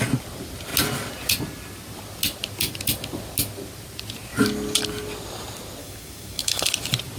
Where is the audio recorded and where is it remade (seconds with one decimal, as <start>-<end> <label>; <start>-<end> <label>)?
0.0-5.8 recorded; 5.8-6.7 remade; 6.7-7.2 recorded